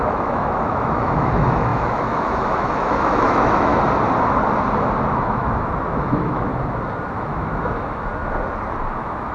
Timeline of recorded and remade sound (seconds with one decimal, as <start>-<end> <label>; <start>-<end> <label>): 0.0-3.7 remade; 3.7-5.1 recorded; 5.1-6.5 remade; 6.5-7.1 recorded; 7.1-8.1 remade; 8.1-8.9 recorded; 8.9-9.3 remade